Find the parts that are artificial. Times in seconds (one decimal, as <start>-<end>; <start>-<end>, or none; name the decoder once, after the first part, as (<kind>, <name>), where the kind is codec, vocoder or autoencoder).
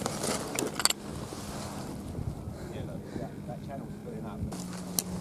none